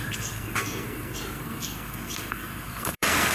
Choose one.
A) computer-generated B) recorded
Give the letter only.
A